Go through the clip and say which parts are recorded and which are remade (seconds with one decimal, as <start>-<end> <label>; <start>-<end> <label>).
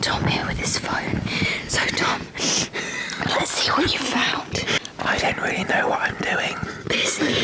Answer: 0.0-0.4 remade; 0.4-2.8 recorded; 2.8-4.2 remade; 4.2-7.4 recorded